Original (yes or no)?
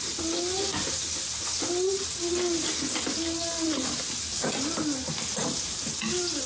yes